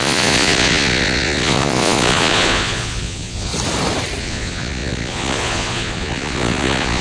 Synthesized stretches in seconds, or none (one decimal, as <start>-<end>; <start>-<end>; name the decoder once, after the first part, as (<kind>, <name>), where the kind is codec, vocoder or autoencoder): 0.0-3.5 (vocoder, Vocos); 4.2-7.0

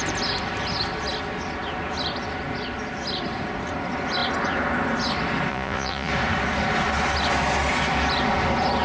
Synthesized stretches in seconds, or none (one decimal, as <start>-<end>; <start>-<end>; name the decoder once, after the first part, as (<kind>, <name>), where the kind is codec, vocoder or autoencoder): 5.5-6.1 (vocoder, Vocos)

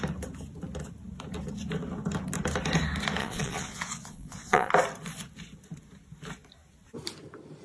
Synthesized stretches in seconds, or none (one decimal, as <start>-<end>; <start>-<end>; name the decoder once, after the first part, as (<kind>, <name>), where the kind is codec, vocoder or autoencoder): 3.2-4.7 (vocoder, Vocos)